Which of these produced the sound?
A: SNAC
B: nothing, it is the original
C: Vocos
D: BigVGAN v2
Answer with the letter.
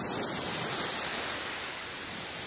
B